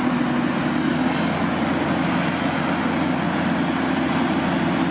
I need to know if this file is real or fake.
real